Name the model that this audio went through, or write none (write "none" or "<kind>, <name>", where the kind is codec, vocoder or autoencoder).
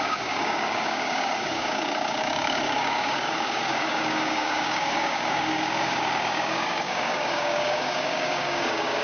codec, DAC